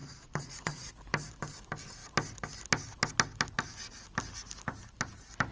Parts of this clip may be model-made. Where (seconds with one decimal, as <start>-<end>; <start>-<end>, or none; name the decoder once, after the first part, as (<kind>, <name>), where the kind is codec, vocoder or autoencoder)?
0.0-0.9 (vocoder, Vocos)